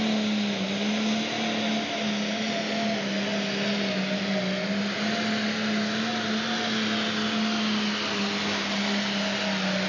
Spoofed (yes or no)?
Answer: no